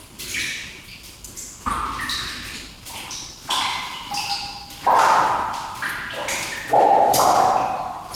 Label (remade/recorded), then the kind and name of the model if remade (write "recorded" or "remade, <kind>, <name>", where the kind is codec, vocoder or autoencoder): recorded